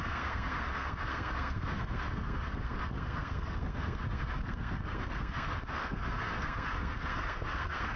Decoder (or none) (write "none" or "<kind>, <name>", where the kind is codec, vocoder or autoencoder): codec, SNAC